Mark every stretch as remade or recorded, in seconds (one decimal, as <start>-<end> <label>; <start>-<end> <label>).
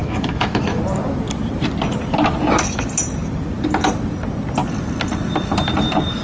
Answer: 0.0-0.8 remade; 0.8-6.2 recorded